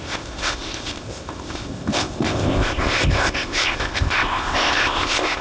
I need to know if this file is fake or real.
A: fake